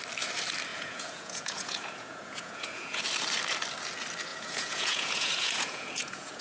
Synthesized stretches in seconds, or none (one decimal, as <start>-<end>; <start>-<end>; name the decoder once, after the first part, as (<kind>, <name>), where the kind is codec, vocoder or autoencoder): 0.7-3.0 (vocoder, Vocos); 4.3-6.4